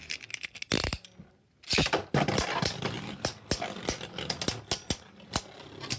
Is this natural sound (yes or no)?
yes